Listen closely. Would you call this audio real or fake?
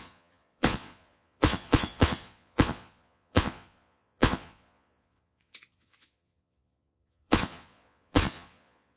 fake